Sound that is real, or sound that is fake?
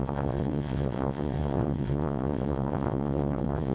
fake